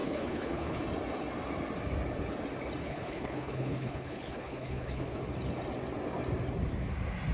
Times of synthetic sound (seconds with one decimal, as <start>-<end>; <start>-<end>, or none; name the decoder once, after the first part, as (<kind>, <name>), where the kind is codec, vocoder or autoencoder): 0.0-0.8 (codec, HILCodec); 2.8-5.2